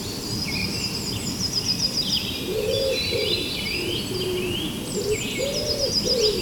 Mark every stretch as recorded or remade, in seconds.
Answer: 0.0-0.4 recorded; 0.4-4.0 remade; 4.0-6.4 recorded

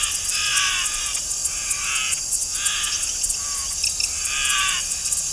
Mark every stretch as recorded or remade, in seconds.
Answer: 0.0-1.4 remade; 1.4-4.6 recorded; 4.6-5.3 remade

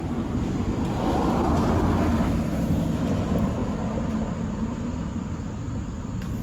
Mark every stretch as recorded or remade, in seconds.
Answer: 0.0-6.4 recorded

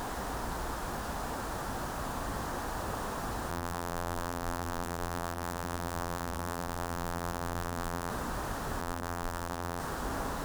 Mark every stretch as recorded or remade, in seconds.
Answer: 0.0-3.5 recorded; 3.5-8.1 remade; 8.1-8.8 recorded; 8.8-9.8 remade; 9.8-10.4 recorded

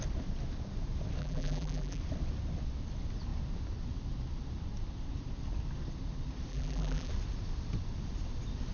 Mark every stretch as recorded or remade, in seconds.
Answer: 0.0-1.2 recorded; 1.2-2.0 remade; 2.0-6.5 recorded; 6.5-7.1 remade; 7.1-8.7 recorded

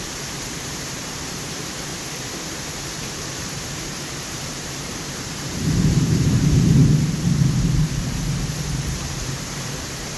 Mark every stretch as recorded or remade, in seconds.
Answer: 0.0-1.9 remade; 1.9-2.8 recorded; 2.8-6.8 remade; 6.8-8.5 recorded; 8.5-10.2 remade